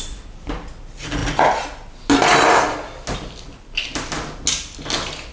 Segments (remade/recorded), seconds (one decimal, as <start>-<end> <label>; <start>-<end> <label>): 0.0-5.3 recorded